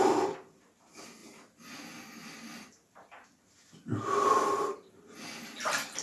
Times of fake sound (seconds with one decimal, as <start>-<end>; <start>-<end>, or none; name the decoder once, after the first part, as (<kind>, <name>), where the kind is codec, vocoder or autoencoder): none